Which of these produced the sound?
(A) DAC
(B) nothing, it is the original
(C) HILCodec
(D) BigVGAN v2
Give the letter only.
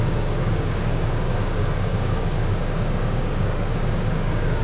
A